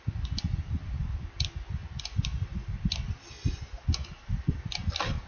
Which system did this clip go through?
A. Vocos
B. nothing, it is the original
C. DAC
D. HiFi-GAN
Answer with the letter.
B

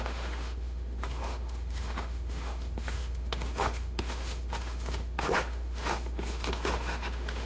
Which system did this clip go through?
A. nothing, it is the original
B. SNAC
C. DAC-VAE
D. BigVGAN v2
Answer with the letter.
C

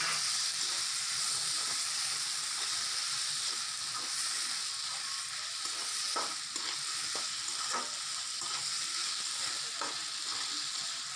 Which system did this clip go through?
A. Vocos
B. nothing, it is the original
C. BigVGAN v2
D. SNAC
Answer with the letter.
B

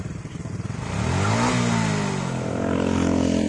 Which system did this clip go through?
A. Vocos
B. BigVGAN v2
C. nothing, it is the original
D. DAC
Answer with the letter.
C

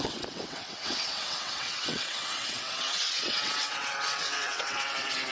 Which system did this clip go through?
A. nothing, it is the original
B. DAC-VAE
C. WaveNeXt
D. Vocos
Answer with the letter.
C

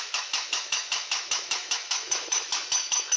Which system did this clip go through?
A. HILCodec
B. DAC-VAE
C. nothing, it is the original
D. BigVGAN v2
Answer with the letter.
B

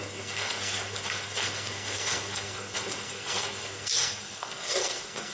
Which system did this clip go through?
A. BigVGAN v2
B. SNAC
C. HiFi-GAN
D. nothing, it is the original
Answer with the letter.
B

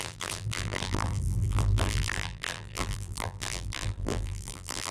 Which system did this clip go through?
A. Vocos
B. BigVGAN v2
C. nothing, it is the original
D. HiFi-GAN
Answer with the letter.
B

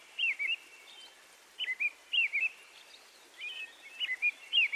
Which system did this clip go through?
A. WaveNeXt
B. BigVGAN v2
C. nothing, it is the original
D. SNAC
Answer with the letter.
C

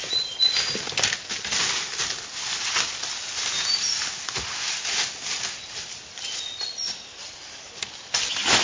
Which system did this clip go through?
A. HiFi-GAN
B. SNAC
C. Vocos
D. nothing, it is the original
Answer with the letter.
D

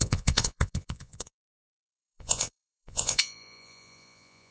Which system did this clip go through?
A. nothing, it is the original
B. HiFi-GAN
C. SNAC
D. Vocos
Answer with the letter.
D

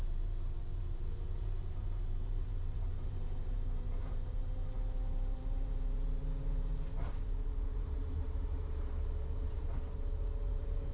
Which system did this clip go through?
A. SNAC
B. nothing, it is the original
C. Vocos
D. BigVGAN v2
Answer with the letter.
D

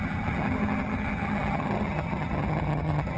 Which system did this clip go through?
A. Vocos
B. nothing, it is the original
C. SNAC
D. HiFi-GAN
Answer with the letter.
D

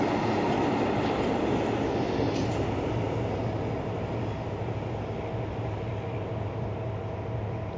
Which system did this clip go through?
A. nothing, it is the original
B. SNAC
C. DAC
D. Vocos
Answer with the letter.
A